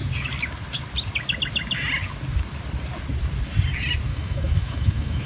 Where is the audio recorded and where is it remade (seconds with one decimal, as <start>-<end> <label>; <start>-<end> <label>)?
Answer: 0.0-4.1 recorded; 4.1-5.3 remade